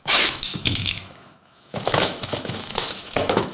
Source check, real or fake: fake